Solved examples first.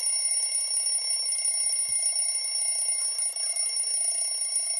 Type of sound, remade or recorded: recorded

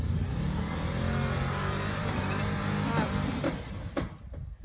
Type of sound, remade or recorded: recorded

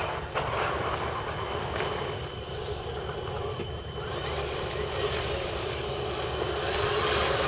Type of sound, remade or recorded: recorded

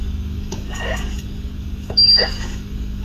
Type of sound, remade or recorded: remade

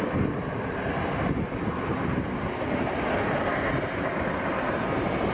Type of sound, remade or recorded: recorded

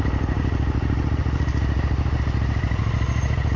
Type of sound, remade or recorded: recorded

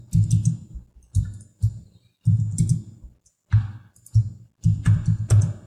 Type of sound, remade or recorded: recorded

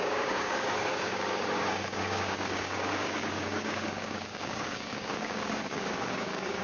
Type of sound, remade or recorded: remade